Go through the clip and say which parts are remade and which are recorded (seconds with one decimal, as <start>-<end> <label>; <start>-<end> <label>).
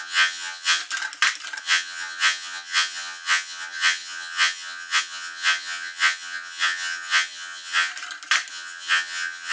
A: 0.0-0.8 remade; 0.8-1.6 recorded; 1.6-7.9 remade; 7.9-8.5 recorded; 8.5-9.5 remade